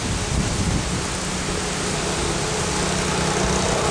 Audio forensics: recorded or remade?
recorded